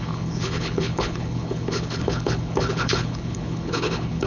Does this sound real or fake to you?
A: fake